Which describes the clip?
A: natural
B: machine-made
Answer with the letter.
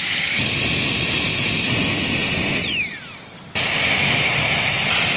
A